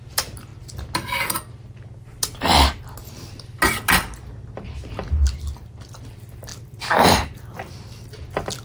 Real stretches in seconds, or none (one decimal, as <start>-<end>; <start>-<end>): 0.0-0.5; 1.5-6.5; 7.4-8.6